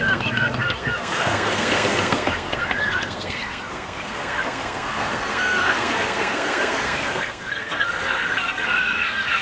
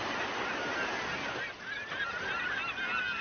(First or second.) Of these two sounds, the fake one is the first